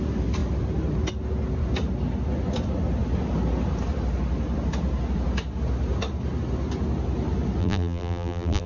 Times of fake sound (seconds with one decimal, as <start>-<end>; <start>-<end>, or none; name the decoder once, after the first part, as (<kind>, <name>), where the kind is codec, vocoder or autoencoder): 7.6-8.7 (vocoder, BigVGAN v2)